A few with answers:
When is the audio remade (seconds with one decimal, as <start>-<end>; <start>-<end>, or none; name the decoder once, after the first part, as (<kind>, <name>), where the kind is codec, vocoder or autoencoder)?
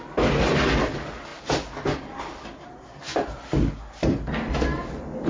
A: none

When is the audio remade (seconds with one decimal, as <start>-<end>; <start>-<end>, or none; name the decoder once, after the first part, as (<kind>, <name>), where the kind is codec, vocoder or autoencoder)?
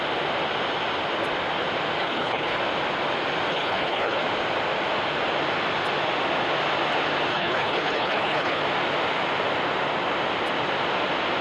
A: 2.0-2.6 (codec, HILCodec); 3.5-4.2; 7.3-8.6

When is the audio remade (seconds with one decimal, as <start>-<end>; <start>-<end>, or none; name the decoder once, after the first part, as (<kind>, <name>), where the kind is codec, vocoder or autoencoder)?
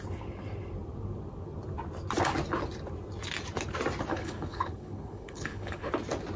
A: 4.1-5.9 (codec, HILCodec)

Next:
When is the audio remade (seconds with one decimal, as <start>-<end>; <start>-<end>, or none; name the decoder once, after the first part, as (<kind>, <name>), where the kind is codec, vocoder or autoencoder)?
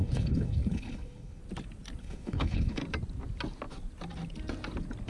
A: 0.0-1.4 (codec, HILCodec); 2.0-2.8